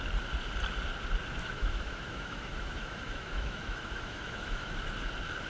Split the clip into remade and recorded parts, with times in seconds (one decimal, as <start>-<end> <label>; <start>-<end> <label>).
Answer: 0.0-1.4 recorded; 1.4-4.7 remade; 4.7-5.5 recorded